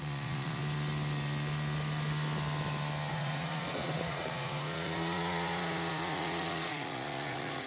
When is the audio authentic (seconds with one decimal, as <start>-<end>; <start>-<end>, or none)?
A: 0.6-3.1

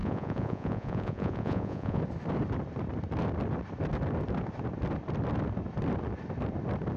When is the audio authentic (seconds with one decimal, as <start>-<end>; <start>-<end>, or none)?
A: 2.0-7.0

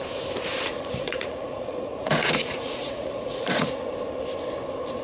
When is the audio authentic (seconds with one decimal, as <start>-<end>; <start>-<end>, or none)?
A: 0.0-0.7; 3.7-5.0